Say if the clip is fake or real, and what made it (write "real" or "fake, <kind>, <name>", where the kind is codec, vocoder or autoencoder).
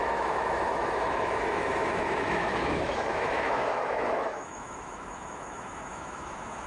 fake, autoencoder, DAC-VAE